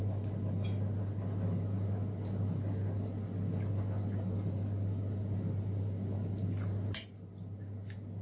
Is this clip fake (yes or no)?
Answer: no